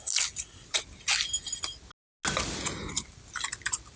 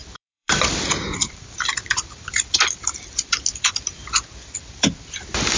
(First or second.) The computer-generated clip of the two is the second